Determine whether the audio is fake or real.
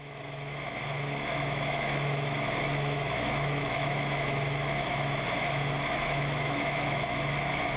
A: fake